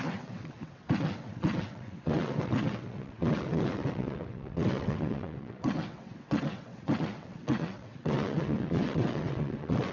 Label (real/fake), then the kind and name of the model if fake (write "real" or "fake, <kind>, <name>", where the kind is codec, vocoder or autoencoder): fake, vocoder, WaveNeXt